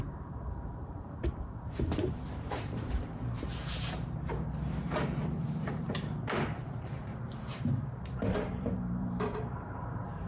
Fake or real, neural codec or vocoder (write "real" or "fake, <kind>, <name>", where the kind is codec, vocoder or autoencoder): fake, vocoder, BigVGAN v2